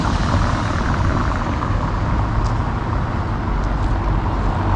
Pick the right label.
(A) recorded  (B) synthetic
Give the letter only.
A